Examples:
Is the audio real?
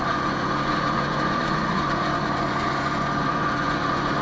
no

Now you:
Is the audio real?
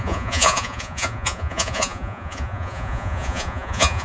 no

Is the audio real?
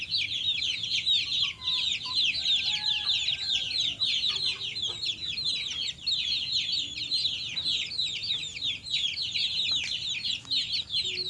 yes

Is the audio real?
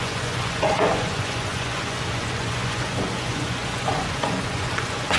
no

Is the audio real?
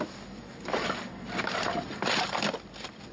yes